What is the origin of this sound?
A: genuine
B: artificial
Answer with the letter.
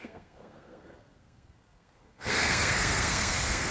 B